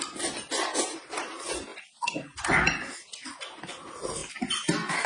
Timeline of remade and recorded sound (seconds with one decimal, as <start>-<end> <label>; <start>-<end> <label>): 0.0-5.1 recorded